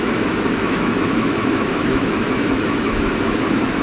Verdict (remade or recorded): remade